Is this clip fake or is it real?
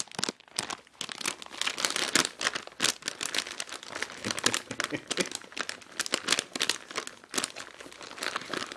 real